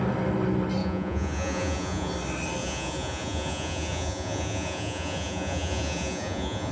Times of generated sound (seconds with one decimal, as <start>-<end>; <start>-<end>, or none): 0.8-2.1; 2.6-6.7